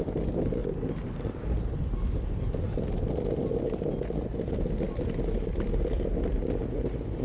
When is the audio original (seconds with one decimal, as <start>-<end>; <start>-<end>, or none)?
0.0-7.2

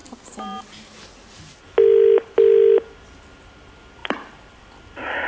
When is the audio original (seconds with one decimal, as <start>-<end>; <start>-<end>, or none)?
0.0-4.0; 4.6-5.3

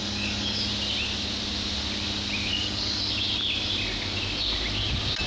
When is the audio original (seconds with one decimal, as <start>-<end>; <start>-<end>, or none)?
0.6-2.5; 3.0-5.3

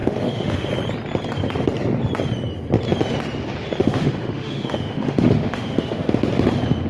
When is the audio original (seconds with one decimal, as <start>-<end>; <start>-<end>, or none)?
0.7-3.8; 6.2-6.9

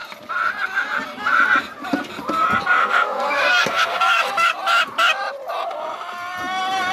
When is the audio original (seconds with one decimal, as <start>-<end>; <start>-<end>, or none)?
0.0-2.8; 4.5-6.9

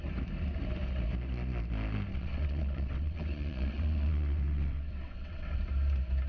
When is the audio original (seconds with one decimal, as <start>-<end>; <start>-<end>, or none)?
0.0-2.1; 5.6-6.3

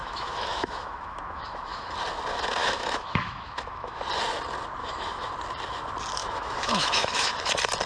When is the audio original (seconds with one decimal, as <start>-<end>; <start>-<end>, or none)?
1.9-2.6; 4.0-4.8; 5.3-6.2; 7.3-7.9